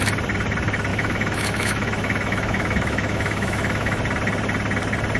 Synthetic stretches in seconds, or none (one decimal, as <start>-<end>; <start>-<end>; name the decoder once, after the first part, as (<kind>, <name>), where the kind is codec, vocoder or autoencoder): 0.9-4.0 (autoencoder, DAC-VAE)